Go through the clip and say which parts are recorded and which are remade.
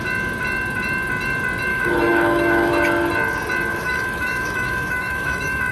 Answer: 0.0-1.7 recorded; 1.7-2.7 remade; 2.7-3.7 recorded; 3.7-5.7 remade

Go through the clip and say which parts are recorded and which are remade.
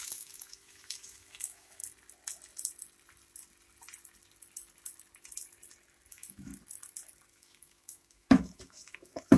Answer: 0.0-1.8 remade; 1.8-6.1 recorded; 6.1-6.5 remade; 6.5-7.3 recorded; 7.3-9.4 remade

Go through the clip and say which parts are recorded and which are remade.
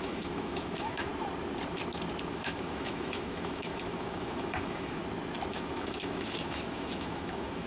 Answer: 0.0-1.1 remade; 1.1-2.3 recorded; 2.3-5.0 remade; 5.0-5.5 recorded; 5.5-7.7 remade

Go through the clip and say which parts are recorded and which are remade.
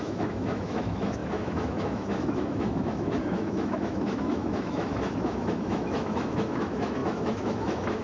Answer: 0.0-8.0 remade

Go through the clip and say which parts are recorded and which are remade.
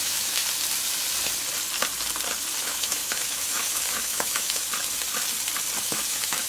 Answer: 0.0-0.4 remade; 0.4-2.6 recorded; 2.6-4.7 remade; 4.7-5.8 recorded; 5.8-6.5 remade